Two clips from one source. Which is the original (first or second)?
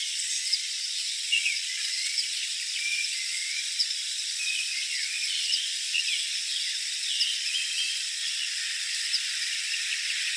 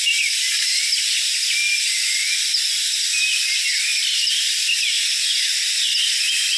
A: second